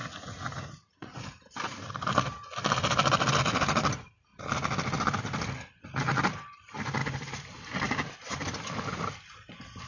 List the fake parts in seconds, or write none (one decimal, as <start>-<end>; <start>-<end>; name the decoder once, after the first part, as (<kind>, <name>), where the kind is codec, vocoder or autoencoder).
0.0-1.2 (vocoder, Vocos)